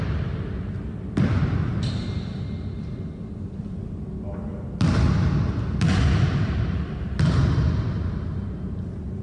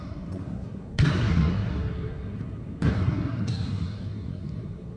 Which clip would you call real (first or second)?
first